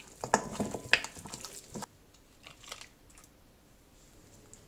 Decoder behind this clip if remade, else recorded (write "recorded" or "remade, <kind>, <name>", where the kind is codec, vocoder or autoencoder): recorded